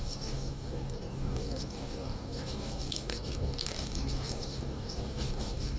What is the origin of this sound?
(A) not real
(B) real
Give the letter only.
A